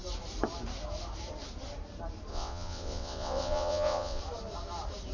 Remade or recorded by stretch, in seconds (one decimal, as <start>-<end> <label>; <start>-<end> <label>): 0.0-2.3 recorded; 2.3-4.2 remade; 4.2-5.1 recorded